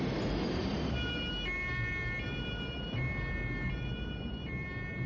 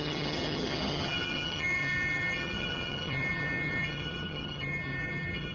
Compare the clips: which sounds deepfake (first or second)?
second